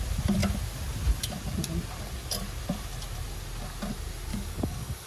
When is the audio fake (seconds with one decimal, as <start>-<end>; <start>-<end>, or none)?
4.3-5.1